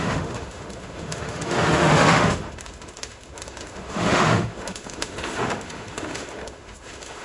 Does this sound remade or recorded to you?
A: remade